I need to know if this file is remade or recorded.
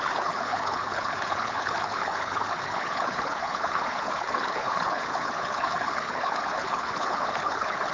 remade